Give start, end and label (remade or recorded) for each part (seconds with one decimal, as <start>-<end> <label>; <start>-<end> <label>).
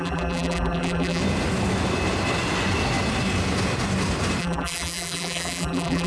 0.0-1.2 remade; 1.2-4.4 recorded; 4.4-6.1 remade